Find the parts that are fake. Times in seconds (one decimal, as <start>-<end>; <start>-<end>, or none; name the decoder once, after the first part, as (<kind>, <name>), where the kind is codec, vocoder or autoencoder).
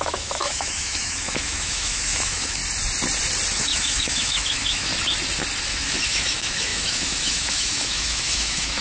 0.0-2.6 (autoencoder, DAC-VAE); 3.5-4.9; 5.7-8.8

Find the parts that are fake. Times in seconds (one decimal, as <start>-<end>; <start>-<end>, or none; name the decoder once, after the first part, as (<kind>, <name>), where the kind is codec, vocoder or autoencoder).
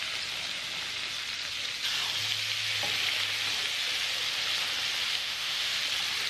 5.1-5.8 (autoencoder, DAC-VAE)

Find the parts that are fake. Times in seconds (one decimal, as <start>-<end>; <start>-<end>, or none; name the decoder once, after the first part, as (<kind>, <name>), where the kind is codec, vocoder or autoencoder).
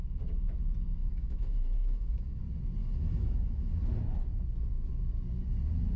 1.0-2.4 (autoencoder, DAC-VAE); 2.8-3.7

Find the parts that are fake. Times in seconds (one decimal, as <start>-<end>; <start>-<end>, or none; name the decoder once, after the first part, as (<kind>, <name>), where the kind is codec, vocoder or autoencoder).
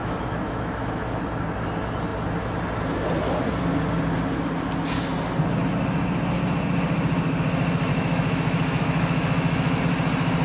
0.0-1.2 (autoencoder, DAC-VAE); 7.9-9.8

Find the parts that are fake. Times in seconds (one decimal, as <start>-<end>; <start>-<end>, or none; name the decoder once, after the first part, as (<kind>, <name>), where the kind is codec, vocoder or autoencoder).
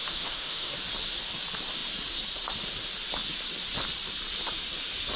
0.0-0.7 (autoencoder, DAC-VAE)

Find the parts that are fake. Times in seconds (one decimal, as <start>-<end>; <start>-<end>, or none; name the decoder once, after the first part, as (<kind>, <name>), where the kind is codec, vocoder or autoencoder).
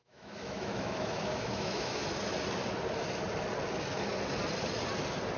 0.0-2.0 (autoencoder, DAC-VAE)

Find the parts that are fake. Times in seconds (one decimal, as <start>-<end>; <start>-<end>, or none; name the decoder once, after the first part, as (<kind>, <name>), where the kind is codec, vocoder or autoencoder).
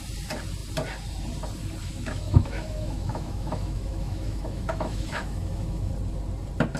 1.8-5.9 (autoencoder, DAC-VAE)